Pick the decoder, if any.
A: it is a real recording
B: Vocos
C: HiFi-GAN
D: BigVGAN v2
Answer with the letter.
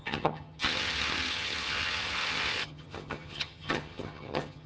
C